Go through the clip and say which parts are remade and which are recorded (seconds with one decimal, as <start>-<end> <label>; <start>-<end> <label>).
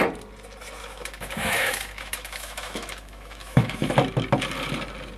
0.0-0.8 recorded; 0.8-3.9 remade; 3.9-5.2 recorded